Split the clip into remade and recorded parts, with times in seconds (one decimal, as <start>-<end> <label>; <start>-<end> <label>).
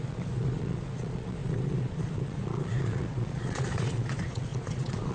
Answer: 0.0-5.1 remade